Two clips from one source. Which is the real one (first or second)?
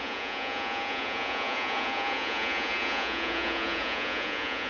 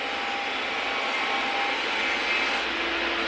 second